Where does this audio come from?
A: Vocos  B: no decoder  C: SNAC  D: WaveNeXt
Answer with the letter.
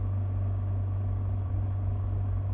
B